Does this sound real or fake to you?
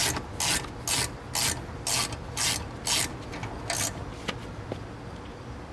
real